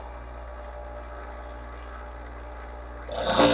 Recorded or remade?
recorded